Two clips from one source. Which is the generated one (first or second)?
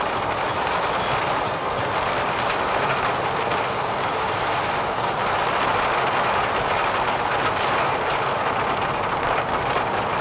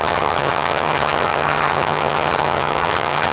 second